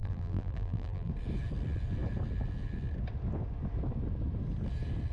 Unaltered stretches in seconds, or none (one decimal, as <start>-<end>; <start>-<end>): 1.1-5.1